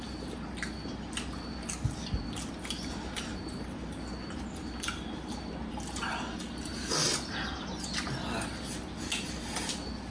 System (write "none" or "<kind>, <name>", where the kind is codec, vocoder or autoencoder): none